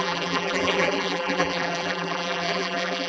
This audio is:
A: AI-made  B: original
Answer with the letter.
A